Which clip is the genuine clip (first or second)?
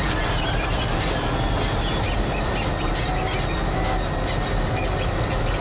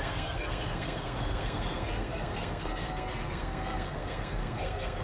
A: first